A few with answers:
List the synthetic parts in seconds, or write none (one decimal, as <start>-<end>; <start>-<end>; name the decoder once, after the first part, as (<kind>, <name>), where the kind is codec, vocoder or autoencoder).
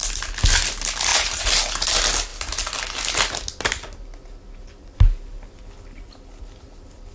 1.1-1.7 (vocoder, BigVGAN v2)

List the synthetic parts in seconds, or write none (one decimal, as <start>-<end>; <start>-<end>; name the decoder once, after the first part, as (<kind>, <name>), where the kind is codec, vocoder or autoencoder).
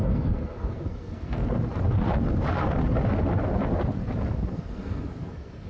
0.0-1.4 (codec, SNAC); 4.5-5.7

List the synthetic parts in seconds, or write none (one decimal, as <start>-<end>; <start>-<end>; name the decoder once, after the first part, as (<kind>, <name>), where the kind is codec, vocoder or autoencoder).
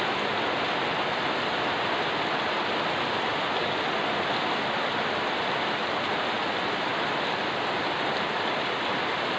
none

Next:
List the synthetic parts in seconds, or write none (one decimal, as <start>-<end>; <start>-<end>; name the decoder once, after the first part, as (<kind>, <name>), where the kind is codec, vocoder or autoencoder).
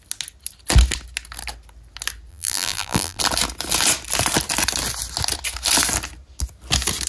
2.3-3.2 (vocoder, BigVGAN v2)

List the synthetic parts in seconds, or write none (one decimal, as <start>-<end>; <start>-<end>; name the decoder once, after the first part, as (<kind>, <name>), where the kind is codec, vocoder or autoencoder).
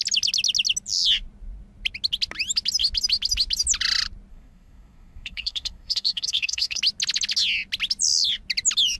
4.3-6.8 (codec, SNAC)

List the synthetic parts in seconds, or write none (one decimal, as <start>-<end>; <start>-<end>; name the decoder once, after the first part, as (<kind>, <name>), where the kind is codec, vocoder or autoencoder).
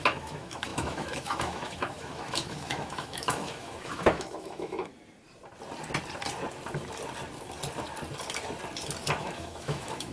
0.0-4.9 (autoencoder, DAC-VAE); 9.2-10.1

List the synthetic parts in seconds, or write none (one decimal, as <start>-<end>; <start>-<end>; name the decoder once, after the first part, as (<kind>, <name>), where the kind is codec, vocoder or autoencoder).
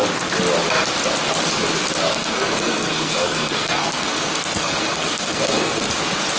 2.1-5.9 (codec, SNAC)